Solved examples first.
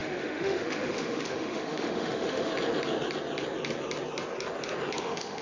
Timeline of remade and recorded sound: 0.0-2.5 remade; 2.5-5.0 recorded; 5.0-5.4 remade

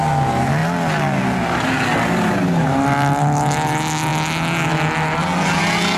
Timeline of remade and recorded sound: 0.0-6.0 recorded